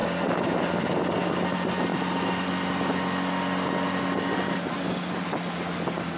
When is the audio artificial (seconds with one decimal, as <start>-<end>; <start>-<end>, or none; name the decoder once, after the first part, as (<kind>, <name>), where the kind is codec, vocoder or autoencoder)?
none